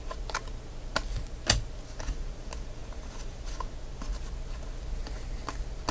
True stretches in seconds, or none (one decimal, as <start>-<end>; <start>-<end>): 0.0-2.8; 3.5-5.9